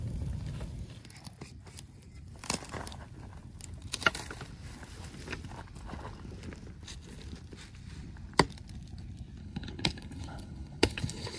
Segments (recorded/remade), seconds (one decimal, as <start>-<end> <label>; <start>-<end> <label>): 0.0-9.4 recorded; 9.4-11.4 remade